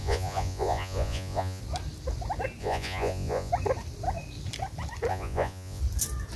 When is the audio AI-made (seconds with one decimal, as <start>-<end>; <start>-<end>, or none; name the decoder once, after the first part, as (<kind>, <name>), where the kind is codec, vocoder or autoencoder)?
0.0-1.6 (vocoder, Vocos); 2.6-3.5; 5.1-5.8